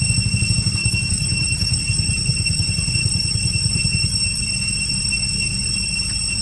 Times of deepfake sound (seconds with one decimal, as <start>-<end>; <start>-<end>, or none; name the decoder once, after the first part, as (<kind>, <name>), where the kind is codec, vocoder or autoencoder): 0.8-1.8 (autoencoder, DAC-VAE)